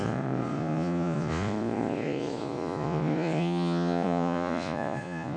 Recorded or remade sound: remade